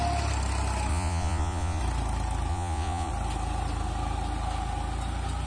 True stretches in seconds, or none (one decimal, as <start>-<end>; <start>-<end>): 0.0-0.9; 1.8-2.5; 3.1-5.5

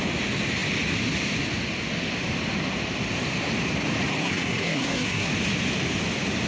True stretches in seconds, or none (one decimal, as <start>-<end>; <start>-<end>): 0.0-4.2; 5.3-6.5

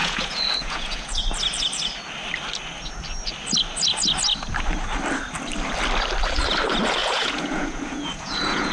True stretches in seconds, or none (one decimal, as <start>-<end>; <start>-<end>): 1.2-7.0

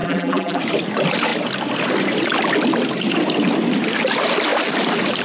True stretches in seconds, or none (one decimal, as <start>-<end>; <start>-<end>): 0.6-5.2

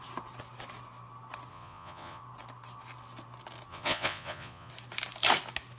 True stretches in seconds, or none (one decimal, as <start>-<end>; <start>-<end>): 0.0-1.5; 2.2-3.7; 4.7-5.8

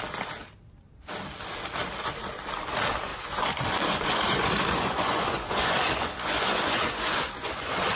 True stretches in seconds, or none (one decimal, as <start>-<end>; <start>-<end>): 0.0-3.1